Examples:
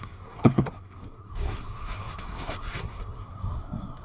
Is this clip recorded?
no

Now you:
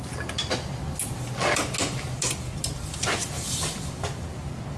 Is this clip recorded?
yes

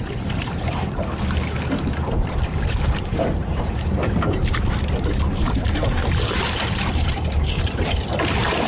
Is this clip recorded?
no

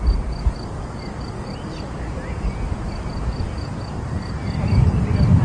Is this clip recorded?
yes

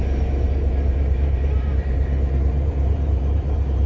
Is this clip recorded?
no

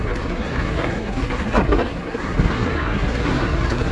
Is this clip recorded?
no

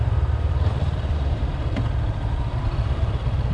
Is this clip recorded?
no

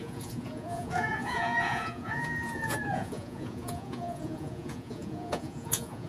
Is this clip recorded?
no